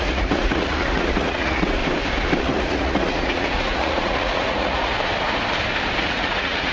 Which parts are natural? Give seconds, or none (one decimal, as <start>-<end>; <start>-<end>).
1.8-2.4; 4.9-5.9